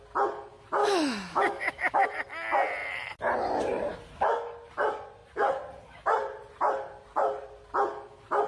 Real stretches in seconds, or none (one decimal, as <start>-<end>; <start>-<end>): 0.0-0.8; 2.1-8.5